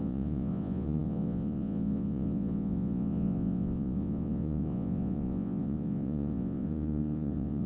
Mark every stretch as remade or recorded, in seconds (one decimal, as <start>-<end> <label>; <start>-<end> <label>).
0.0-7.7 remade